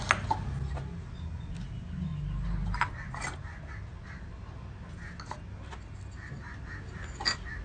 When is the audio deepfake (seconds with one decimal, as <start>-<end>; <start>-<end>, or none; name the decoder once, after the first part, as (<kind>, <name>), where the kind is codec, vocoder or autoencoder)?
none